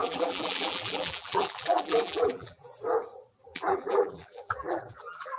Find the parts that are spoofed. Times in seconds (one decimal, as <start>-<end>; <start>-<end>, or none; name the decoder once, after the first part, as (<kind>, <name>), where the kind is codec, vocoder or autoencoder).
0.0-2.8 (vocoder, BigVGAN v2); 3.5-5.4